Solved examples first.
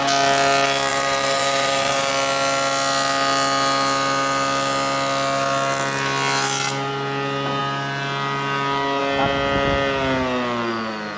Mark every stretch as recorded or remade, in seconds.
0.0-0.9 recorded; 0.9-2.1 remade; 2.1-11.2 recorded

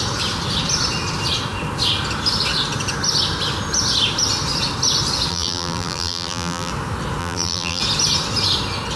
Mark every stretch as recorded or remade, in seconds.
0.0-5.3 recorded; 5.3-6.7 remade; 6.7-7.2 recorded; 7.2-7.8 remade; 7.8-9.0 recorded

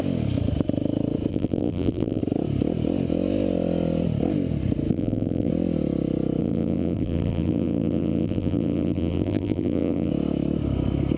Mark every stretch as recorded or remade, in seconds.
0.0-1.3 recorded; 1.3-2.2 remade; 2.2-4.9 recorded; 4.9-5.5 remade; 5.5-6.4 recorded; 6.4-10.1 remade; 10.1-11.2 recorded

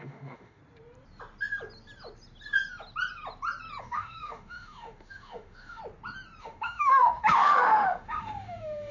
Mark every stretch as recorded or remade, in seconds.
0.0-0.6 remade; 0.6-3.8 recorded; 3.8-5.8 remade; 5.8-6.4 recorded; 6.4-8.9 remade

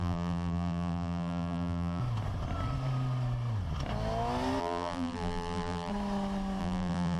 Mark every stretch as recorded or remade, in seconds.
0.0-2.0 remade; 2.0-4.6 recorded; 4.6-5.9 remade; 5.9-6.6 recorded; 6.6-7.2 remade

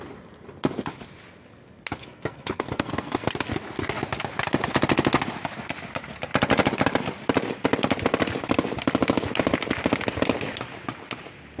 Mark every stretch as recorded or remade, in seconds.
0.0-2.0 recorded; 2.0-3.3 remade; 3.3-11.6 recorded

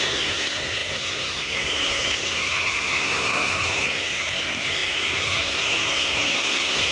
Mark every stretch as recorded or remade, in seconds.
0.0-6.9 remade

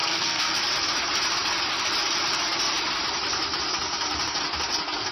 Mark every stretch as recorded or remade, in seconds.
0.0-0.6 remade; 0.6-5.1 recorded